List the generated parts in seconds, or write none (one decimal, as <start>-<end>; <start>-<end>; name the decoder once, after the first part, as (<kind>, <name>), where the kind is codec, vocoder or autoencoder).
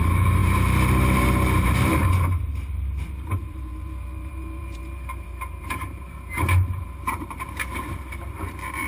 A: 0.0-8.9 (vocoder, BigVGAN v2)